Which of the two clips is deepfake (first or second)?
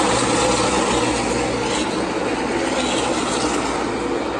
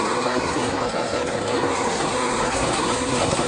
second